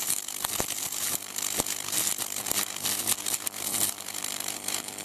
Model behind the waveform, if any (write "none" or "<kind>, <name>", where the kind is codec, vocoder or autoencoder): vocoder, BigVGAN v2